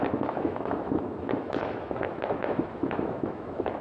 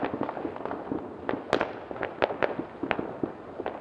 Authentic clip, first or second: second